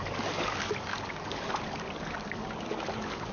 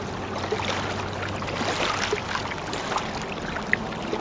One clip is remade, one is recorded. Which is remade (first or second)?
first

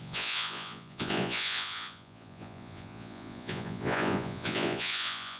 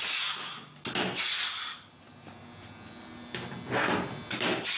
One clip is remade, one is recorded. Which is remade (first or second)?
first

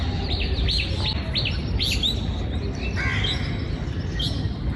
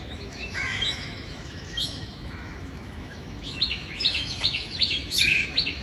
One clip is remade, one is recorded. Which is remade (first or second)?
second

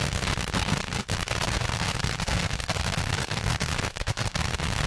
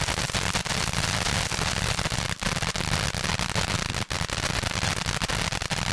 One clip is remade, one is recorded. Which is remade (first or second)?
first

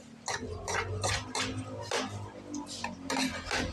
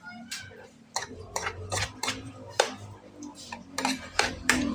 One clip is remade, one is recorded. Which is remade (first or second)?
second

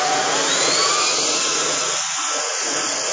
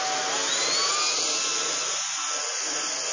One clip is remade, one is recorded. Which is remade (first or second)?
first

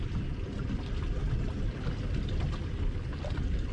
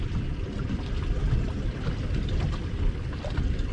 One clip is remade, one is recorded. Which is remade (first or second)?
second